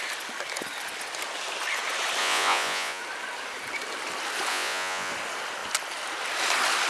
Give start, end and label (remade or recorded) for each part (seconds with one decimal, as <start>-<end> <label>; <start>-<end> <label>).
0.0-2.2 recorded; 2.2-3.0 remade; 3.0-4.5 recorded; 4.5-5.1 remade; 5.1-6.9 recorded

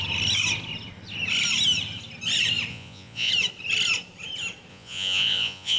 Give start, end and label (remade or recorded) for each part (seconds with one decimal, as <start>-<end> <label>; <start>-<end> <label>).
0.0-2.7 recorded; 2.7-3.3 remade; 3.3-4.7 recorded; 4.7-5.8 remade

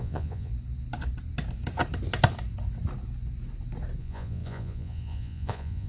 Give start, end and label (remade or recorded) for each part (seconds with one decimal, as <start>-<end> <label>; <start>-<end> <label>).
0.0-0.5 remade; 0.5-4.0 recorded; 4.0-5.9 remade

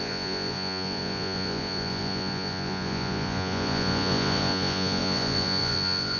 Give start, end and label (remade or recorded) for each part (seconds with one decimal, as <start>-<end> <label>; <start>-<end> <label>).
0.0-6.2 remade

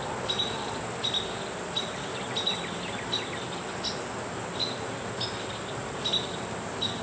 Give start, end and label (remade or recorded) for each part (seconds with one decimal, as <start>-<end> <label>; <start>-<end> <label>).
0.0-7.0 recorded

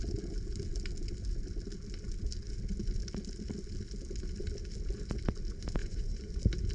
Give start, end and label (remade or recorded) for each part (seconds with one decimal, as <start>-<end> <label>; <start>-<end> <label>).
0.0-5.8 recorded; 5.8-6.3 remade; 6.3-6.7 recorded

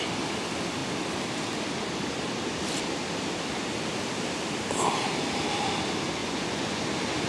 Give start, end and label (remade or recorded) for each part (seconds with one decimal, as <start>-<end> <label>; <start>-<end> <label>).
0.0-6.2 recorded; 6.2-6.8 remade; 6.8-7.3 recorded